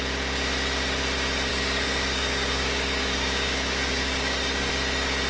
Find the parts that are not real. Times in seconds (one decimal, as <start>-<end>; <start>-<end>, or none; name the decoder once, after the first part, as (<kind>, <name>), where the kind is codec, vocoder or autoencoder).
1.5-4.7 (codec, DAC)